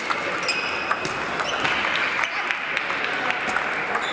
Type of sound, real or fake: real